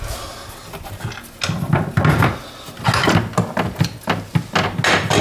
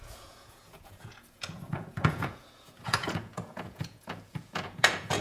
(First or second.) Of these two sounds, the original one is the first